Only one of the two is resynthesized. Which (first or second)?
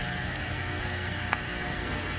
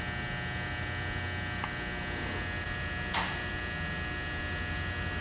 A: first